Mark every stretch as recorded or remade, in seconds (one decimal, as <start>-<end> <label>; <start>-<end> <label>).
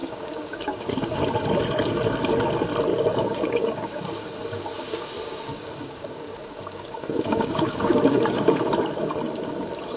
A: 0.0-1.2 remade; 1.2-2.9 recorded; 2.9-4.0 remade; 4.0-4.7 recorded; 4.7-8.7 remade; 8.7-10.0 recorded